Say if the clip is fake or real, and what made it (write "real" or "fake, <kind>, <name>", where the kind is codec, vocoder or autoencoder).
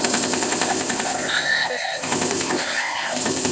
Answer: fake, codec, ZipCodec